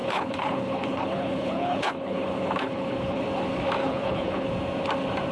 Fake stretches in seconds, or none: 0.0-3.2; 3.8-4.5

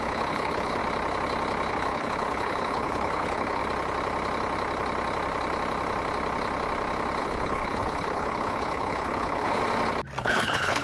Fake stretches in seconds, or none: 0.0-0.8; 1.7-3.6; 7.2-9.6; 10.2-10.8

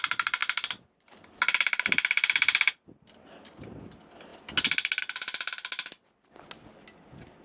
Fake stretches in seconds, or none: none

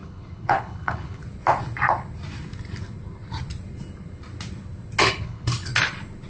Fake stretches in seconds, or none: 0.0-1.2; 5.0-5.7

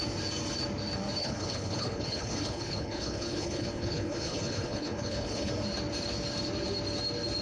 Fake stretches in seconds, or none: 1.2-5.5

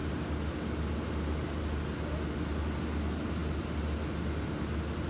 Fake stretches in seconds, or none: none

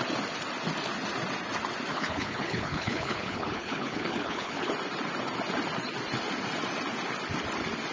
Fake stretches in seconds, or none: 1.9-4.7

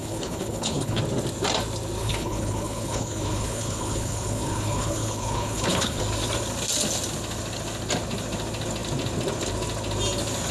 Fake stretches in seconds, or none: 0.0-1.0; 2.0-6.0